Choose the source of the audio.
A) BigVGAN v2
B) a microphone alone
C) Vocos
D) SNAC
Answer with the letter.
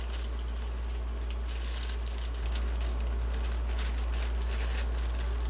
B